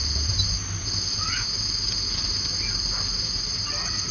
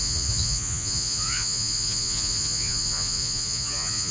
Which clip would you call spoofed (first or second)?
second